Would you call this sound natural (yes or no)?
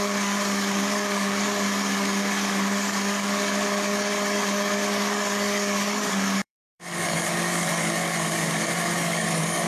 no